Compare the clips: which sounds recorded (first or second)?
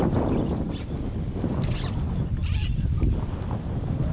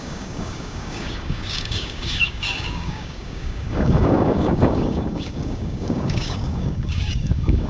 first